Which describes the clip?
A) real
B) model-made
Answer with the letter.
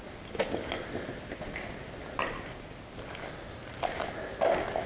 A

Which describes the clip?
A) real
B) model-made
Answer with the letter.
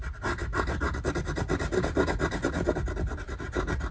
A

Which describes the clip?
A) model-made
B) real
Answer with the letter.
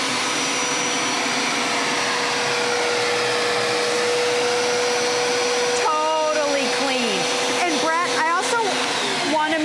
B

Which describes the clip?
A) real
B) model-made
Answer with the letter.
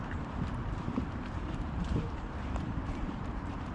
B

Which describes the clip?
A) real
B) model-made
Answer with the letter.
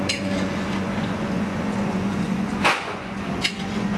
B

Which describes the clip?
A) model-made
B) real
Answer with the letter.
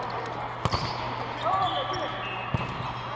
B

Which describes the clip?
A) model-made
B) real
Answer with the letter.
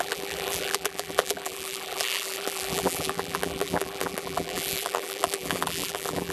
A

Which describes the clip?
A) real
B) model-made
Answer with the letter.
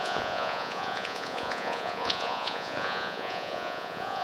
B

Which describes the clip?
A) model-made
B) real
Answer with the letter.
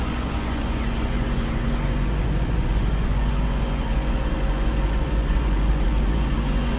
A